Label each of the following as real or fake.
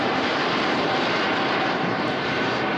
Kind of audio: fake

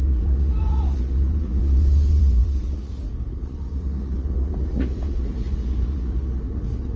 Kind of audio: fake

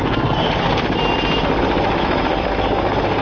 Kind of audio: real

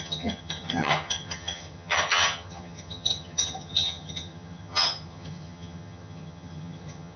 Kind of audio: fake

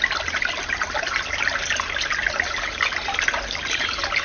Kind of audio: real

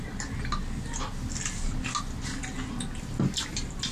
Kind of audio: real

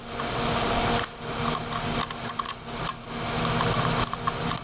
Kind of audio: real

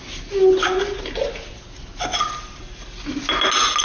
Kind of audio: real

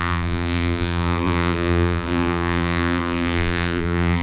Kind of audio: fake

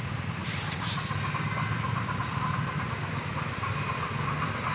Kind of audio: real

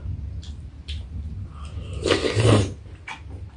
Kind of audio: real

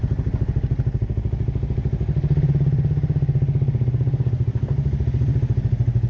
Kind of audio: real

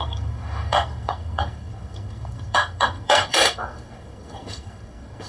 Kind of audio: fake